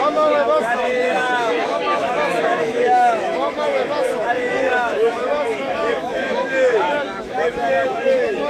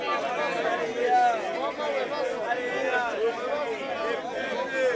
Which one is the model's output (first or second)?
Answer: first